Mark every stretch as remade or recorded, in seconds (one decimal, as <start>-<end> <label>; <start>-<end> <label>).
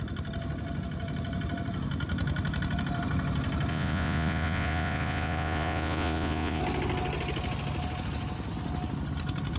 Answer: 0.0-3.7 recorded; 3.7-6.6 remade; 6.6-9.6 recorded